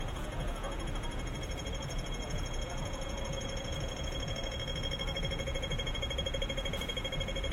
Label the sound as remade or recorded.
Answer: remade